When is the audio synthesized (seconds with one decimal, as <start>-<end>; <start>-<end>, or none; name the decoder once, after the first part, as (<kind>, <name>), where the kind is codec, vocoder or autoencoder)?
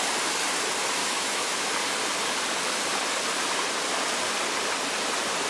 1.0-1.7 (autoencoder, DAC-VAE)